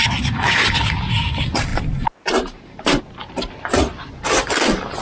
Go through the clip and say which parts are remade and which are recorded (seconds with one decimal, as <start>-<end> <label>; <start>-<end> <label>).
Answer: 0.0-0.8 remade; 0.8-1.7 recorded; 1.7-3.0 remade; 3.0-5.0 recorded